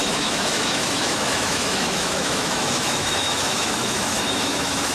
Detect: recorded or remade remade